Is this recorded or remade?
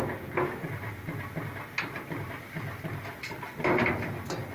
recorded